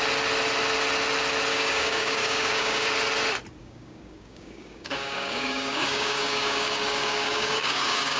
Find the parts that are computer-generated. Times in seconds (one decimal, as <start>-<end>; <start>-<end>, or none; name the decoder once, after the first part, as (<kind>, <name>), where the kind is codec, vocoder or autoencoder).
1.5-2.9 (codec, DAC); 3.6-8.2